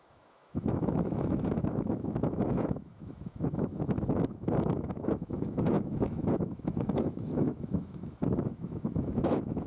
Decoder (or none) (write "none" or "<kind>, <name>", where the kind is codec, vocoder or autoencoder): autoencoder, DAC-VAE